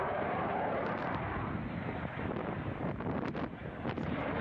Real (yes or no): yes